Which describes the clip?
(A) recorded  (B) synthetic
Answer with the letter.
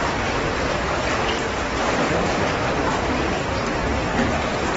A